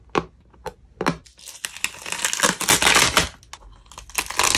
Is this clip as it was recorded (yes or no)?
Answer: yes